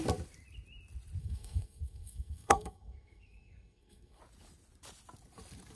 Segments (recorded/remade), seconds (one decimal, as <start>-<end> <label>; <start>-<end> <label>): 0.0-1.2 recorded; 1.2-4.2 remade; 4.2-5.8 recorded